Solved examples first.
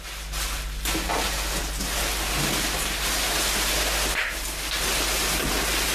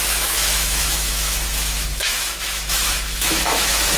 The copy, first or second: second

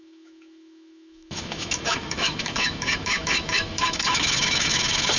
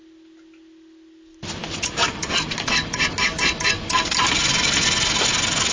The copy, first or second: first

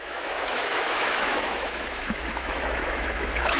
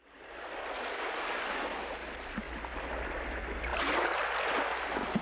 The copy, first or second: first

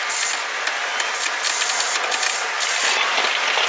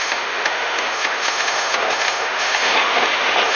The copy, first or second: second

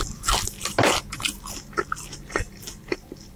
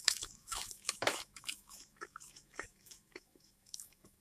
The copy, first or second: second